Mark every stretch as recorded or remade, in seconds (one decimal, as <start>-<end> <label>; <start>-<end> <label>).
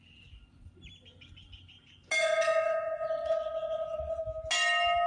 0.0-2.2 recorded; 2.2-4.2 remade; 4.2-5.1 recorded